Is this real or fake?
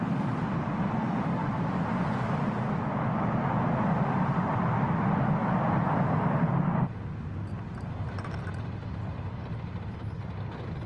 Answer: real